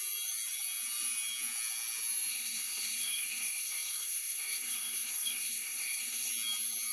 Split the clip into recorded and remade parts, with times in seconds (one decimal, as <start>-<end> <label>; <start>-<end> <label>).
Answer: 0.0-2.3 recorded; 2.3-6.3 remade; 6.3-6.9 recorded